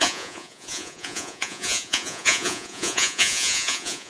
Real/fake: fake